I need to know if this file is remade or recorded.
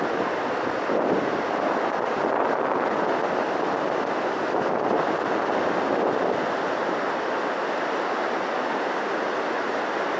recorded